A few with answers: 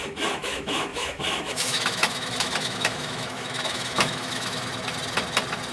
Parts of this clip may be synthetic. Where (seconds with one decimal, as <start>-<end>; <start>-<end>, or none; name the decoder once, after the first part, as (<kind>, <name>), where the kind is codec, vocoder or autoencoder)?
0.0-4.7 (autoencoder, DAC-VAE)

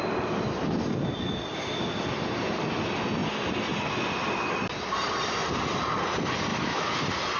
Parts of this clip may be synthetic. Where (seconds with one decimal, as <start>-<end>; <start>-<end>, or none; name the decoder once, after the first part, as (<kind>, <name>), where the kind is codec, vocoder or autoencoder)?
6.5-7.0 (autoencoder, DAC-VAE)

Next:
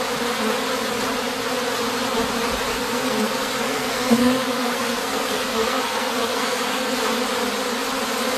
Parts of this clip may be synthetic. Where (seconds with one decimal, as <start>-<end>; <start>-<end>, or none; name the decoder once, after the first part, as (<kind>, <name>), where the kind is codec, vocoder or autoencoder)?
2.7-7.0 (codec, SNAC)

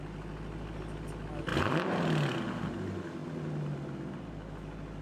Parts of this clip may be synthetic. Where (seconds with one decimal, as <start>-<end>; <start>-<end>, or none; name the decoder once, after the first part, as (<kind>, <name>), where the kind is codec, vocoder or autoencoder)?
none

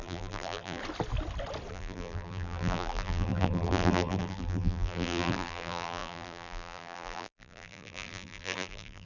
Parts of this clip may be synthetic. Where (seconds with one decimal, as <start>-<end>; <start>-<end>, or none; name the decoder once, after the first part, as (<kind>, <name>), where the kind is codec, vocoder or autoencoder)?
0.0-0.8 (vocoder, BigVGAN v2); 1.7-9.1

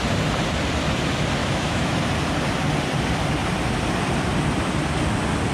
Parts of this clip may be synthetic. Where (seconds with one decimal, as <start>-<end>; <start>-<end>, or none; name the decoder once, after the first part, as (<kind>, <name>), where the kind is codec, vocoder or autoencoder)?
1.4-2.0 (autoencoder, DAC-VAE)

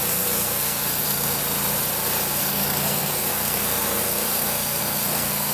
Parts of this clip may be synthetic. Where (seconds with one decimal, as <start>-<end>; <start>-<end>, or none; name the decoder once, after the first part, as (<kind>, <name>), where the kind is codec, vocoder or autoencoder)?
0.0-1.4 (codec, SNAC); 2.3-5.5